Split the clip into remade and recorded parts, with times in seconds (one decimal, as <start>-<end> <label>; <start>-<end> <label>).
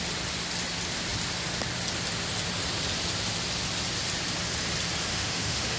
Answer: 0.0-5.1 recorded; 5.1-5.8 remade